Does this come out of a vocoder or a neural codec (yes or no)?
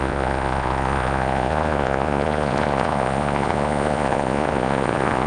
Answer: yes